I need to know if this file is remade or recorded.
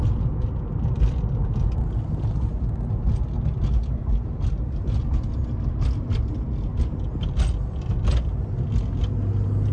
recorded